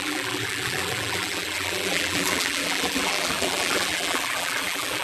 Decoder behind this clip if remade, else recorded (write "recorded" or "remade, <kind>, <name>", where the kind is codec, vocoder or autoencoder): remade, vocoder, BigVGAN v2